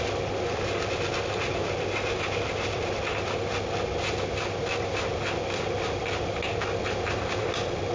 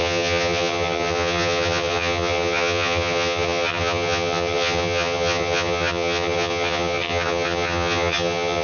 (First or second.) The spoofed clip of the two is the second